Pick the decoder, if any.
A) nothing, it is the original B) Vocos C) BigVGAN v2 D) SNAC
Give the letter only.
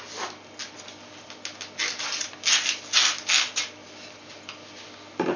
A